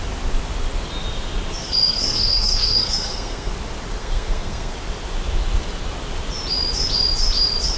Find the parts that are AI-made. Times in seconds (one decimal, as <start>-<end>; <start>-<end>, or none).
1.6-3.5; 4.0-4.7